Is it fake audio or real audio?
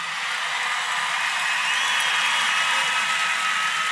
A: real